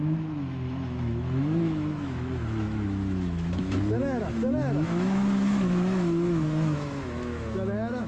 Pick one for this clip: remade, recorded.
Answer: remade